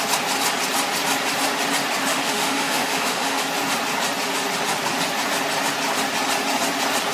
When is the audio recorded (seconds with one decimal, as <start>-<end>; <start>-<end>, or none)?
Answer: 0.0-2.1; 3.4-7.1